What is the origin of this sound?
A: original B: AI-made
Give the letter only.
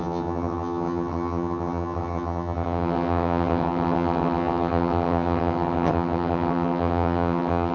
B